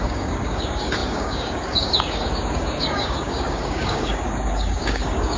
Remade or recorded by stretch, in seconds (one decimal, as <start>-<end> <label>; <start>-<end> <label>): 0.0-5.4 remade